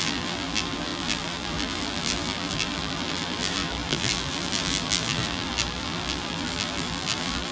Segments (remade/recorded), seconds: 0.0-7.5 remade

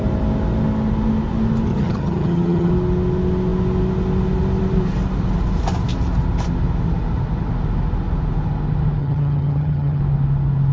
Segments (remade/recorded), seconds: 0.0-1.7 recorded; 1.7-2.7 remade; 2.7-9.0 recorded; 9.0-10.0 remade; 10.0-10.7 recorded